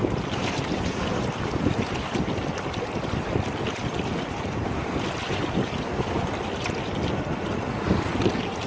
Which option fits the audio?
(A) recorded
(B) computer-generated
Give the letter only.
A